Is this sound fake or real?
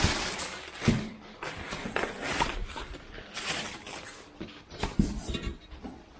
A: real